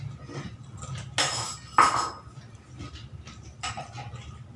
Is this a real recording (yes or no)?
yes